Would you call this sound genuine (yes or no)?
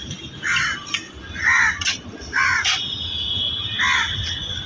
yes